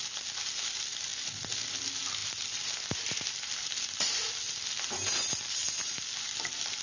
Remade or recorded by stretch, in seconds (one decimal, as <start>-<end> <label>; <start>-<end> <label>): 0.0-6.8 recorded